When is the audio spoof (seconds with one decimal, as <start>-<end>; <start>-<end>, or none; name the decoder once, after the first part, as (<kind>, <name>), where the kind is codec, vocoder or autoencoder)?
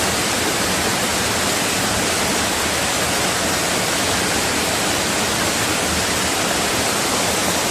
none